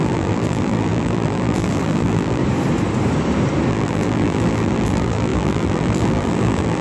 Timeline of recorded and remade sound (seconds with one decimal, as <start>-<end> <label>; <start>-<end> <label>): 0.0-2.4 remade; 2.4-3.7 recorded; 3.7-6.8 remade